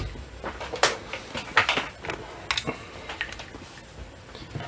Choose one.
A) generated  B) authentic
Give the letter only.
B